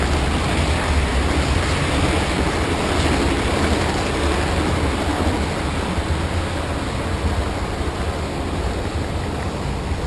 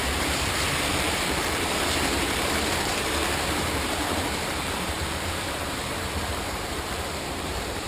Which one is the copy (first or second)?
second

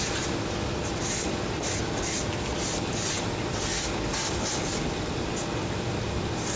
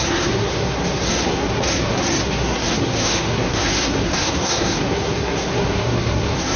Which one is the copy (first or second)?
second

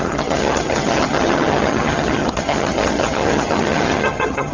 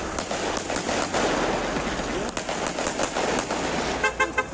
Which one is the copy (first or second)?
first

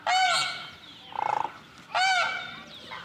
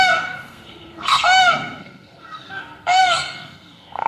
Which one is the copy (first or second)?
second